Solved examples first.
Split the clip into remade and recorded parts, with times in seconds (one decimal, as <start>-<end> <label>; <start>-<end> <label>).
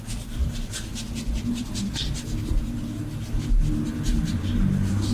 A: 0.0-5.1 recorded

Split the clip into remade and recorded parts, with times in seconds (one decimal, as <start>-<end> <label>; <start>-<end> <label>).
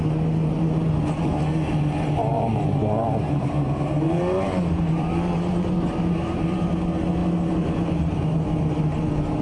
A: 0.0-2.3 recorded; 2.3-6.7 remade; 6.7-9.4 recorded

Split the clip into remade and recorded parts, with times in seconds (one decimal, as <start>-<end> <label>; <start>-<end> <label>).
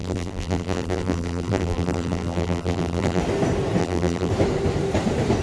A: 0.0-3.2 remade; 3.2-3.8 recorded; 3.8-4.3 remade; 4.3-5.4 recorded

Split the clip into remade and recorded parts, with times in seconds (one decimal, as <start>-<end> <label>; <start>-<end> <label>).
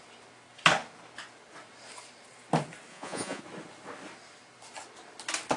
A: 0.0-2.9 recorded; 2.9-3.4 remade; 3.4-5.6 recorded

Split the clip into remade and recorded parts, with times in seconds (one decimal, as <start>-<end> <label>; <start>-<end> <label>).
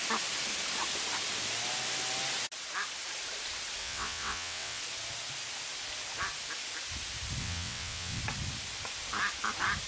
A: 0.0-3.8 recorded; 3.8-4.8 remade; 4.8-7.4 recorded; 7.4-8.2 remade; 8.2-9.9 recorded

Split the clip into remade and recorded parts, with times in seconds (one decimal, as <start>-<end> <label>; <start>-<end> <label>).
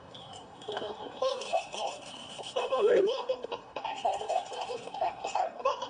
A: 0.0-5.9 remade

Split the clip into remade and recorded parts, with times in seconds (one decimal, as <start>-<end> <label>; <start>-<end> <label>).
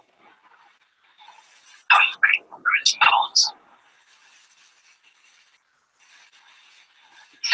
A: 0.0-7.5 recorded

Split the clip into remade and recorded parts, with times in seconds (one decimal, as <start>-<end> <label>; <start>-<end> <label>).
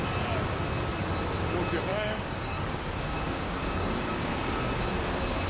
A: 0.0-1.9 recorded; 1.9-4.6 remade; 4.6-5.5 recorded